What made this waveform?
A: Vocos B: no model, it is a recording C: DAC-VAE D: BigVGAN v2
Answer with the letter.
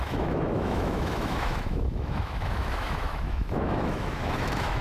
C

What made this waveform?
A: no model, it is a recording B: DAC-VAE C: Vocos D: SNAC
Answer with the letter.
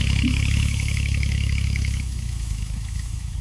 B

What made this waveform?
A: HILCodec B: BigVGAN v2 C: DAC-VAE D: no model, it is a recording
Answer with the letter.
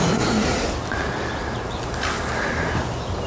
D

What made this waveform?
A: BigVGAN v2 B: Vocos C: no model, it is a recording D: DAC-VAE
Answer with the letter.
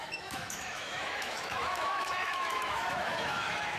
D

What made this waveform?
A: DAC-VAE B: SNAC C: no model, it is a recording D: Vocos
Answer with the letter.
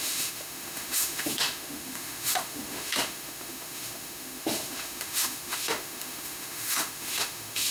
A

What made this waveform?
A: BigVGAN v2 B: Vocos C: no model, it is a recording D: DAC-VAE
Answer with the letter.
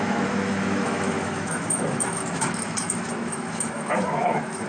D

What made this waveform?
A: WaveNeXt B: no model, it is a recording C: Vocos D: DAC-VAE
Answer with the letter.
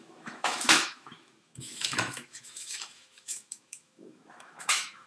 D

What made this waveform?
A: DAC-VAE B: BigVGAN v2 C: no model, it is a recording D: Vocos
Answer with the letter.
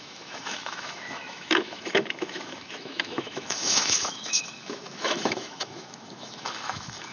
A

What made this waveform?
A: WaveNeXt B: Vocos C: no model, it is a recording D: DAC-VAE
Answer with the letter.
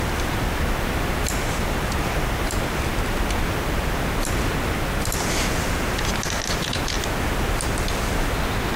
C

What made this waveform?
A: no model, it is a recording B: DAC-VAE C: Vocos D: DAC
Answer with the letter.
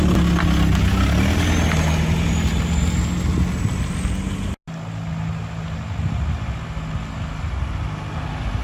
A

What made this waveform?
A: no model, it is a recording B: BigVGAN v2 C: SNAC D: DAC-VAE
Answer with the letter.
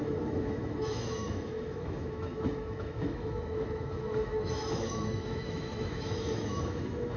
D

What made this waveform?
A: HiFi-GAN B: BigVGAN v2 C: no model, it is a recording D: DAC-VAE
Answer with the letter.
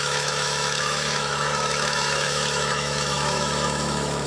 D